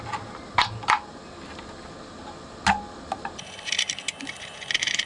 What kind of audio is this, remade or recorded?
recorded